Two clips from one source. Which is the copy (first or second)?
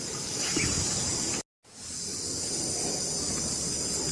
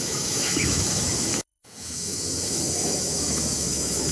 second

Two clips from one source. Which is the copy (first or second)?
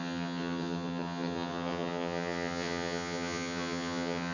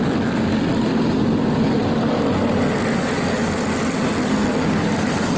first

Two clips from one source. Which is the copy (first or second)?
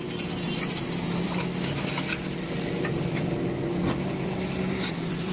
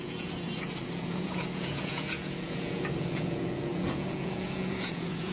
second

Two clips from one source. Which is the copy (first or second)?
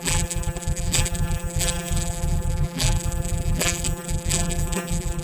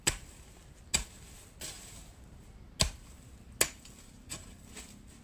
first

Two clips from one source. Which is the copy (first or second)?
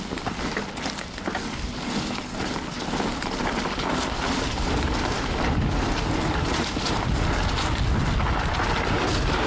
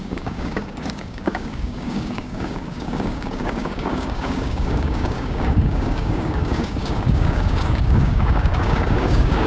second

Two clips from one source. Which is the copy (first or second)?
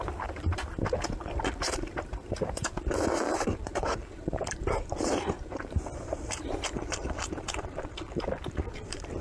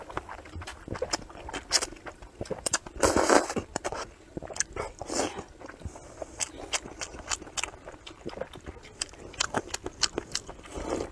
first